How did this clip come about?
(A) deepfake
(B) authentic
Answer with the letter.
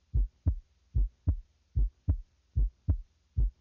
B